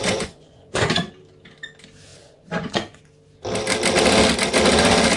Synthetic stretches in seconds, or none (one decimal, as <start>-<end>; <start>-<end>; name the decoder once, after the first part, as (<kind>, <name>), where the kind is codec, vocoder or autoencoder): 0.0-1.1 (vocoder, Vocos); 2.1-3.0